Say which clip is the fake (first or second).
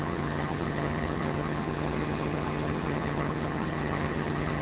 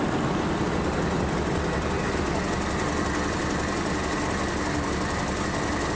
first